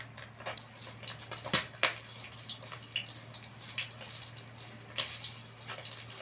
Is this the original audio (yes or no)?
yes